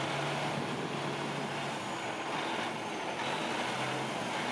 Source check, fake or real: real